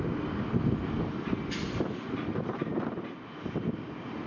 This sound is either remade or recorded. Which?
recorded